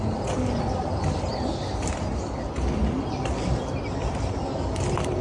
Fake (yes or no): yes